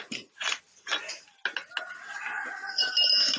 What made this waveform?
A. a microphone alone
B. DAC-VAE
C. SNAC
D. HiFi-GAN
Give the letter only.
A